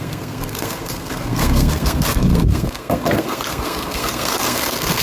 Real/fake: fake